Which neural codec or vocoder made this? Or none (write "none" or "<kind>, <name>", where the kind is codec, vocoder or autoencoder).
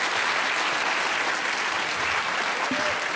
none